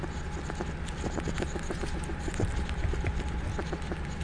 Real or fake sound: real